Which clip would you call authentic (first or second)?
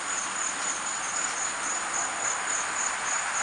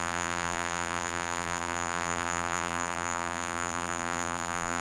first